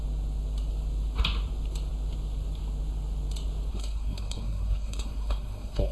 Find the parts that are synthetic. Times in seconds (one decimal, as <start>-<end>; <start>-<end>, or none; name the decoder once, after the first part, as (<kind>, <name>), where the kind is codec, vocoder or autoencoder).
3.7-5.9 (codec, SNAC)